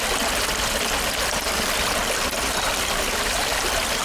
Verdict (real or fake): fake